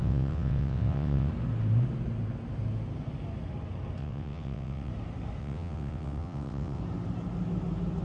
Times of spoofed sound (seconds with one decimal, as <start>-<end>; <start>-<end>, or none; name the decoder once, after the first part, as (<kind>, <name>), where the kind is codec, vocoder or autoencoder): 0.0-1.3 (vocoder, WaveNeXt); 4.0-4.9; 5.4-6.8